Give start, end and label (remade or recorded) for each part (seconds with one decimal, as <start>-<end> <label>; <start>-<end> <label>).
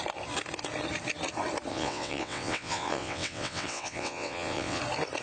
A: 0.0-1.7 recorded; 1.7-4.8 remade; 4.8-5.2 recorded